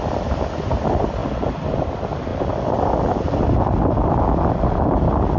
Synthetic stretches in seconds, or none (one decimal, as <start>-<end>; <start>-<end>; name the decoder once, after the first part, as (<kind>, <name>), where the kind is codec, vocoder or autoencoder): none